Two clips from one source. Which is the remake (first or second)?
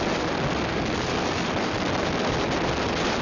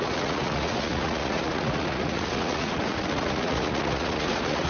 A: second